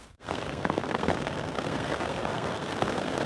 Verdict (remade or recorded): remade